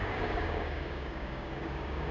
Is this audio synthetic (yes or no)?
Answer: yes